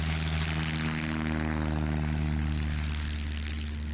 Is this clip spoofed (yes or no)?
no